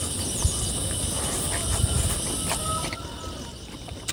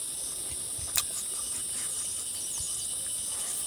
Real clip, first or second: second